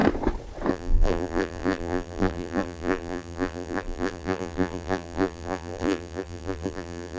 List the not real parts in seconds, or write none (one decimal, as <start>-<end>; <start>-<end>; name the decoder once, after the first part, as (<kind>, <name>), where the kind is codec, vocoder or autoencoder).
0.7-7.2 (vocoder, BigVGAN v2)